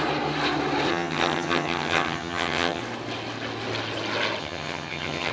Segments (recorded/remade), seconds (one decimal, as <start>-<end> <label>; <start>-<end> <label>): 0.0-0.9 recorded; 0.9-2.8 remade; 2.8-4.4 recorded; 4.4-5.3 remade